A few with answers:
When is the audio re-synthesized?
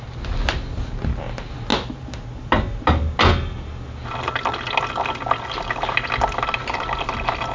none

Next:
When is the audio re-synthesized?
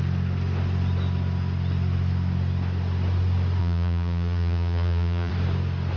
3.6-5.3 (vocoder, Vocos)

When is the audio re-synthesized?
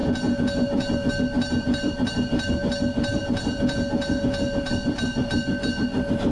0.0-1.1 (vocoder, Vocos); 3.2-4.7